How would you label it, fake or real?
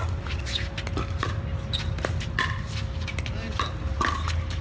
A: real